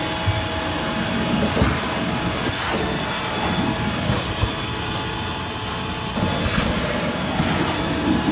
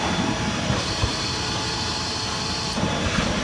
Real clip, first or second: first